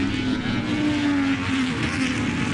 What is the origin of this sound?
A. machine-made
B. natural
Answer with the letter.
B